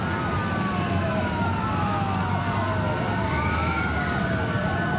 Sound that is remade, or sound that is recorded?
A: recorded